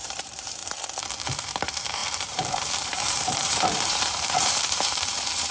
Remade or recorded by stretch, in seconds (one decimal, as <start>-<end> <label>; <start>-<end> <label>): 0.0-0.6 remade; 0.6-1.4 recorded; 1.4-5.5 remade